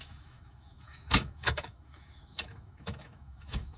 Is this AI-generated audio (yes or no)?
yes